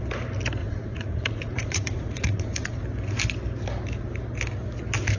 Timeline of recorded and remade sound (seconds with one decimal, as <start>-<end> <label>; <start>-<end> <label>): 0.0-0.6 recorded; 0.6-2.8 remade; 2.8-5.2 recorded